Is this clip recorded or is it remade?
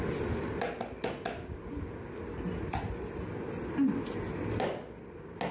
recorded